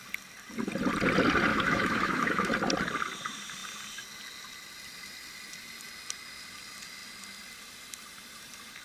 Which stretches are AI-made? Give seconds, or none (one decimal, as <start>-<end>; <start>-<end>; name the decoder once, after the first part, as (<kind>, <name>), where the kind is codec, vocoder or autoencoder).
1.5-2.5 (autoencoder, DAC-VAE)